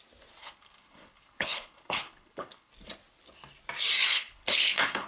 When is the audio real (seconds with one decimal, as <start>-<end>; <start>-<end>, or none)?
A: 0.0-0.4; 2.7-4.1